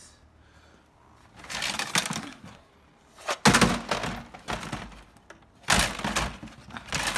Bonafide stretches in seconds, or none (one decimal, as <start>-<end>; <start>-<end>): 0.0-2.2; 2.7-7.2